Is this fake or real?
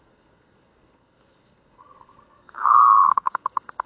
fake